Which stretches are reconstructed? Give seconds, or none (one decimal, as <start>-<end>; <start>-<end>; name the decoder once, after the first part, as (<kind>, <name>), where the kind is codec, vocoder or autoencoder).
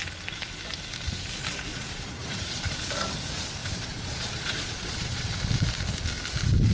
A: 1.7-2.9 (vocoder, Vocos); 3.6-5.4